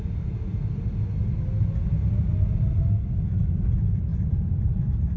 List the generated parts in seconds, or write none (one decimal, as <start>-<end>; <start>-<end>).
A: 0.0-0.5; 3.1-5.2